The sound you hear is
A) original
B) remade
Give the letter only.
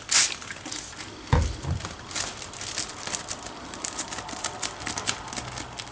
A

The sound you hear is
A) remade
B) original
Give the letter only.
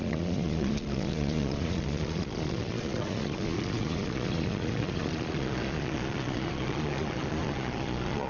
A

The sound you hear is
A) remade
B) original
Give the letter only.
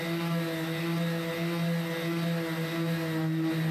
B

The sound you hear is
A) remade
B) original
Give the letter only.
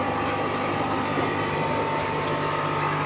B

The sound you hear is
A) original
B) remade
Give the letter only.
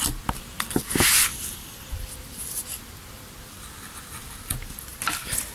A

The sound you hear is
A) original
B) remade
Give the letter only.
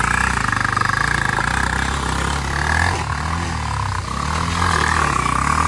A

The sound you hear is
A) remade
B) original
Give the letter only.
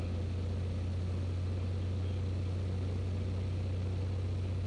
B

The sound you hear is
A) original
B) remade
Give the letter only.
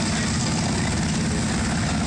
A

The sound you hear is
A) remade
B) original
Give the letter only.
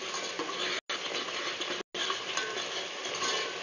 B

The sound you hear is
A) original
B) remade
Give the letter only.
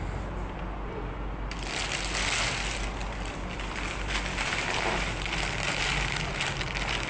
A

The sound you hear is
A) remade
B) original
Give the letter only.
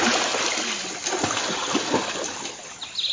B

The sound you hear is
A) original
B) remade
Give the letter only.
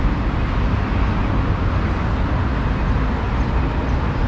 A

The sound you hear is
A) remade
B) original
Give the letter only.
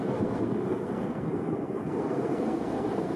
A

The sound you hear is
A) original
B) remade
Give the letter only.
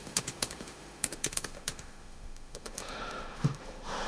B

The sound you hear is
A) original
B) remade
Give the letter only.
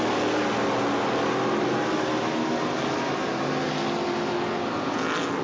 A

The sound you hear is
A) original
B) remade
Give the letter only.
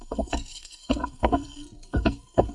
B